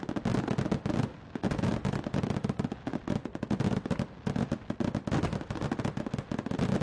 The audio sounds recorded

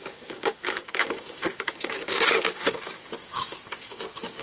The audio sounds remade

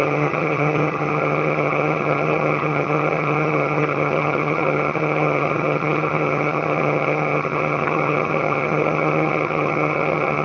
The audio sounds remade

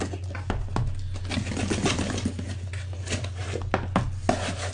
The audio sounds recorded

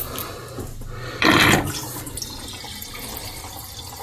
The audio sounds recorded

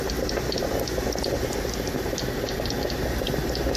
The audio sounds recorded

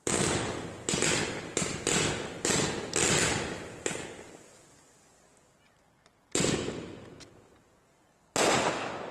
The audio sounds recorded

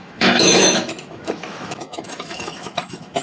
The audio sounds remade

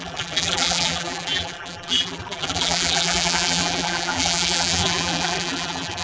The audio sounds remade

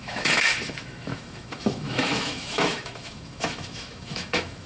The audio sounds remade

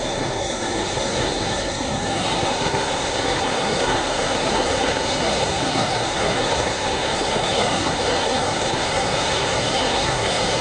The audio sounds remade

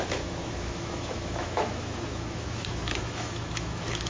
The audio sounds remade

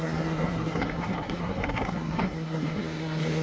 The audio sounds remade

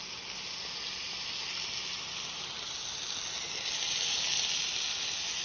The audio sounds recorded